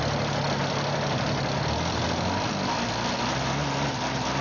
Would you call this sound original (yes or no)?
yes